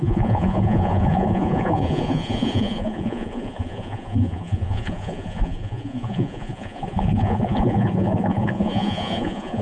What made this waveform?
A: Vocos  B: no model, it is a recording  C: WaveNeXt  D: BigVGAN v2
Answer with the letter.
A